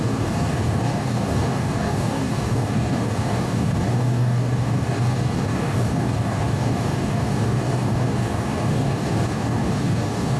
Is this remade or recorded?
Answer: remade